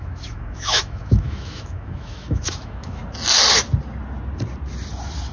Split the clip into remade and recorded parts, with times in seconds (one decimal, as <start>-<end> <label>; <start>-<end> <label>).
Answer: 0.0-3.0 remade; 3.0-5.3 recorded